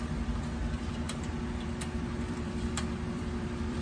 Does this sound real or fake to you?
fake